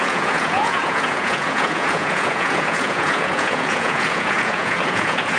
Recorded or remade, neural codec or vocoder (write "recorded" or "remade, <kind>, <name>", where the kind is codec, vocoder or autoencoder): remade, vocoder, Vocos